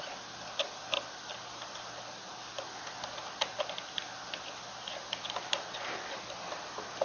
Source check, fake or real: real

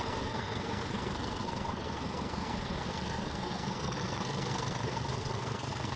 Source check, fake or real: fake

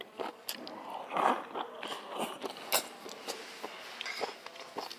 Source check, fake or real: real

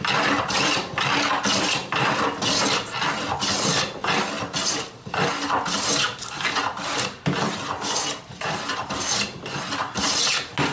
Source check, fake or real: real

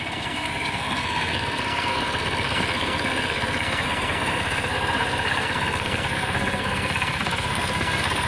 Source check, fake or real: fake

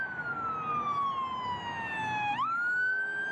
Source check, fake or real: real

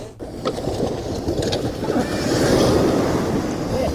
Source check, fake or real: real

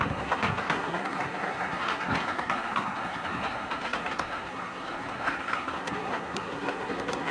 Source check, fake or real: fake